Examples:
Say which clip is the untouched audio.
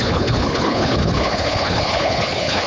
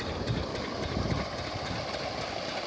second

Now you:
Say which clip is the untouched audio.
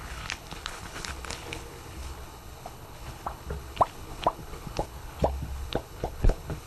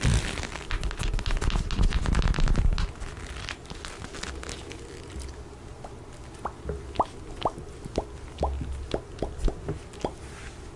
second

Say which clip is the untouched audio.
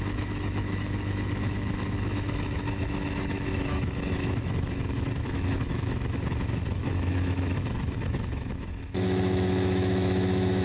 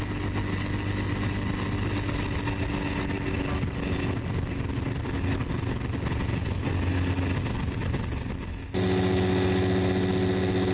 second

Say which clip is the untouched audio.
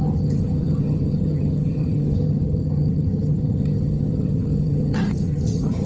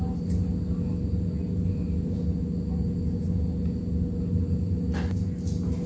second